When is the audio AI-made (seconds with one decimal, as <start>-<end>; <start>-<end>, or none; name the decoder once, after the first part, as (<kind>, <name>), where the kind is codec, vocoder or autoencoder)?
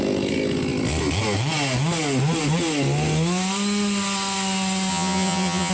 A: 4.9-5.7 (vocoder, HiFi-GAN)